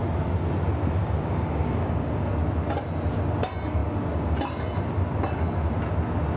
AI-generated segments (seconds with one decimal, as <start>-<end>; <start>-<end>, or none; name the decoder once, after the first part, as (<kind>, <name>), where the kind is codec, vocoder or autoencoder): 1.0-2.3 (codec, DAC)